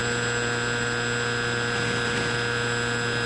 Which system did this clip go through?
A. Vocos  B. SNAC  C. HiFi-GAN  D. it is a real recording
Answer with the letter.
D